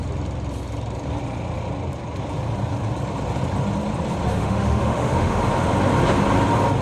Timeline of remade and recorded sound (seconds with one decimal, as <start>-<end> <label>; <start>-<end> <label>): 0.0-4.4 recorded; 4.4-5.4 remade; 5.4-6.8 recorded